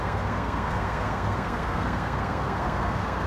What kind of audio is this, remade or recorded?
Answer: remade